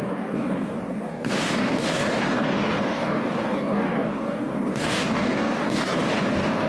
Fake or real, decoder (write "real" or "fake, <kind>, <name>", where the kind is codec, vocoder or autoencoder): fake, codec, DAC